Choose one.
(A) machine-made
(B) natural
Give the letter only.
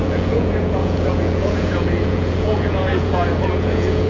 A